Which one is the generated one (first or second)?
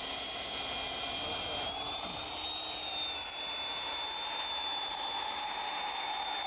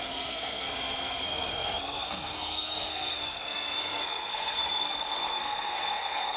second